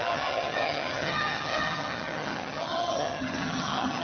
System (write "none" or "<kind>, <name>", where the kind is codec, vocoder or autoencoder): vocoder, HiFi-GAN